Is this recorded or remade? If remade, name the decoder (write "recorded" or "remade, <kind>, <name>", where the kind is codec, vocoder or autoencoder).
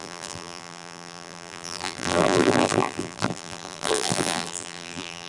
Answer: remade, vocoder, BigVGAN v2